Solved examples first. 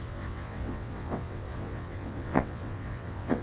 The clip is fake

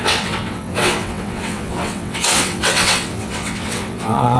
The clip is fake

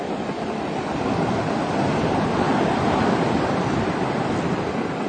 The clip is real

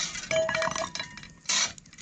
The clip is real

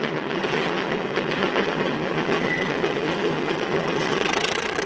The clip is fake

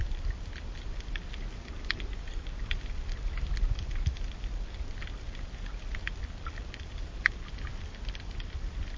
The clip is real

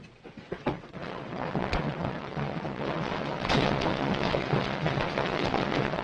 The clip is fake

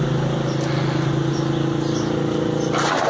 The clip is real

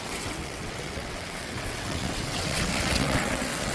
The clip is fake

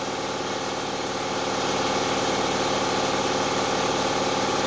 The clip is real